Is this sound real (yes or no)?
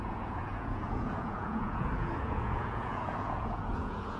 no